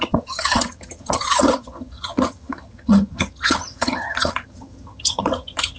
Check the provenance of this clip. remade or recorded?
remade